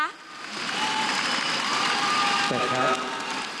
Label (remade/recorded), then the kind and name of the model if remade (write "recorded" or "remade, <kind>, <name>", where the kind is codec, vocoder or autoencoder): recorded